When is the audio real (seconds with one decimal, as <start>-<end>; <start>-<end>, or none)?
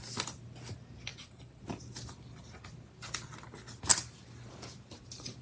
0.0-1.1; 1.6-5.4